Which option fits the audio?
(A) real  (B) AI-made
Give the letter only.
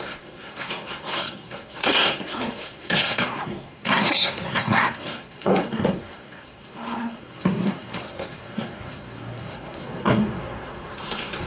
B